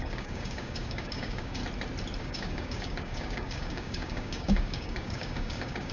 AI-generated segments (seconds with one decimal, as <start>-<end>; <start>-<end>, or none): 0.0-1.6; 2.2-5.9